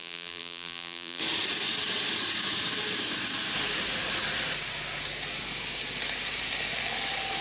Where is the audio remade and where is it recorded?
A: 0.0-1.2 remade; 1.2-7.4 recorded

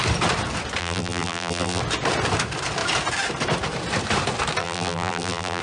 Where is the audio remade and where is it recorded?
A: 0.0-0.8 recorded; 0.8-1.8 remade; 1.8-4.6 recorded; 4.6-5.6 remade

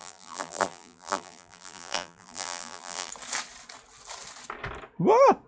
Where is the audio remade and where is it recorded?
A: 0.0-3.1 remade; 3.1-5.5 recorded

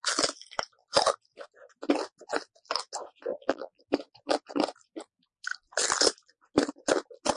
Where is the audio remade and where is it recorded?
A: 0.0-3.3 recorded; 3.3-3.8 remade; 3.8-7.4 recorded

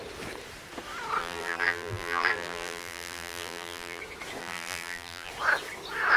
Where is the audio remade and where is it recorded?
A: 0.0-1.2 recorded; 1.2-4.0 remade; 4.0-4.4 recorded; 4.4-5.3 remade; 5.3-6.2 recorded

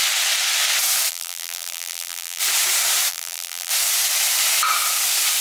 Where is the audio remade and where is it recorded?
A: 0.0-1.1 recorded; 1.1-2.4 remade; 2.4-3.1 recorded; 3.1-3.7 remade; 3.7-5.4 recorded